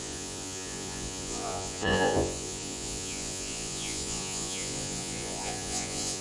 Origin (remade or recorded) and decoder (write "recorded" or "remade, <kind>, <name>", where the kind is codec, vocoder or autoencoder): remade, vocoder, Vocos